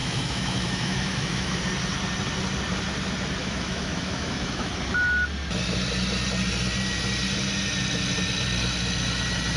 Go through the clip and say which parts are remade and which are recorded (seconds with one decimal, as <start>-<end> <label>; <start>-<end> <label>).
0.0-1.6 remade; 1.6-3.4 recorded; 3.4-4.7 remade; 4.7-9.6 recorded